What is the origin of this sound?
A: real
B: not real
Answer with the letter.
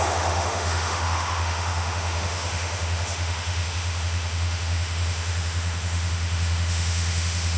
B